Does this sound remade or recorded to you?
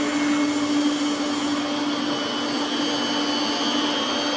recorded